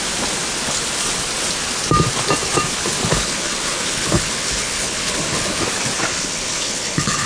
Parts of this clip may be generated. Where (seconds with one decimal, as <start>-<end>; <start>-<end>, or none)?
3.1-5.6; 6.1-7.3